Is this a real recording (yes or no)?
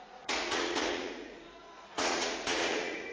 no